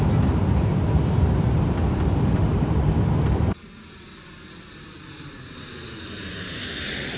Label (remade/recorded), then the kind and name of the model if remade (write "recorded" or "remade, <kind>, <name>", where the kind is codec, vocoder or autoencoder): recorded